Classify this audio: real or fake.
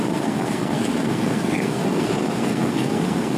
fake